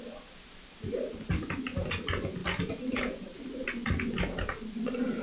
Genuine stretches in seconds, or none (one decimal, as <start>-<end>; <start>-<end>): 0.0-2.4; 3.6-5.2